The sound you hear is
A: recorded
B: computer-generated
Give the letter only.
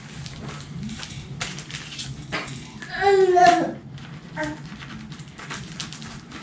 A